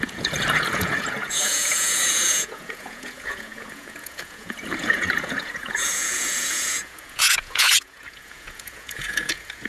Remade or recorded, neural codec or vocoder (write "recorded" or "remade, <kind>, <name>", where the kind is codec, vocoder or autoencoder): remade, vocoder, Vocos